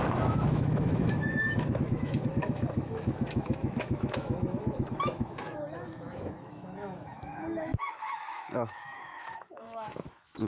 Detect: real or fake fake